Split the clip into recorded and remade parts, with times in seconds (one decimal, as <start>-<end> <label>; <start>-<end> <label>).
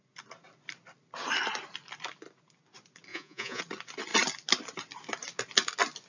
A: 0.0-3.1 recorded; 3.1-3.6 remade; 3.6-6.1 recorded